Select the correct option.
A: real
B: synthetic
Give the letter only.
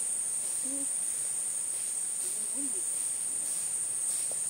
A